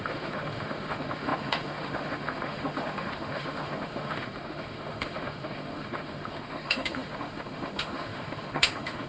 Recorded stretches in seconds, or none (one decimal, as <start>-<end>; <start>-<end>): none